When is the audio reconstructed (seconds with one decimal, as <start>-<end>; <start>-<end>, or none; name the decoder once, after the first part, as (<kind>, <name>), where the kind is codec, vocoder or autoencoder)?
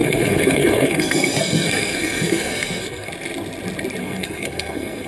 0.0-3.1 (codec, SNAC); 4.0-5.1